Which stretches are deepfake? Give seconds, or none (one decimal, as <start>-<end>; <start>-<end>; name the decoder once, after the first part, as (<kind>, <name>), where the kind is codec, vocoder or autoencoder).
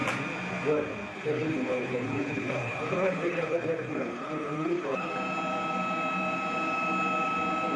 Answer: 1.1-5.1 (codec, HILCodec)